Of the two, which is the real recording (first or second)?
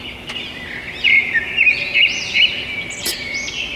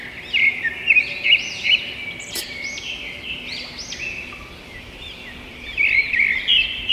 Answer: first